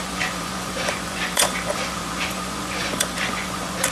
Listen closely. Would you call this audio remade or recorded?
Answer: remade